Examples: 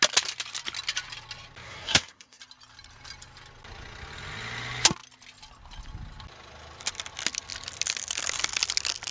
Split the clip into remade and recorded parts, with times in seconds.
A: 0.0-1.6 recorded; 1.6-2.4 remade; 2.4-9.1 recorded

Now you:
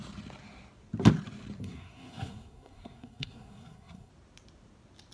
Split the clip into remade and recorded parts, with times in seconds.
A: 0.0-1.6 recorded; 1.6-4.1 remade; 4.1-5.1 recorded

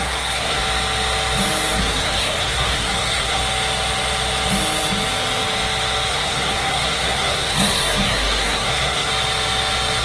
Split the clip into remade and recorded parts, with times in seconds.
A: 0.0-0.6 remade; 0.6-1.8 recorded; 1.8-3.4 remade; 3.4-6.1 recorded; 6.1-9.1 remade; 9.1-10.0 recorded

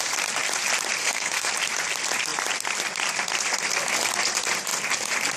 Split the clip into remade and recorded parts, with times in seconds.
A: 0.0-1.0 recorded; 1.0-1.5 remade; 1.5-5.4 recorded

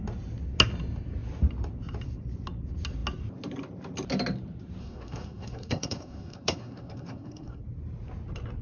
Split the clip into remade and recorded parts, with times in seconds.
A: 0.0-4.8 recorded; 4.8-7.6 remade; 7.6-8.6 recorded